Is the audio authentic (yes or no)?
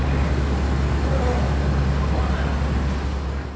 yes